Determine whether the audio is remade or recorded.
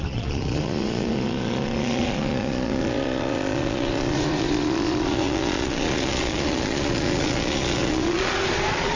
remade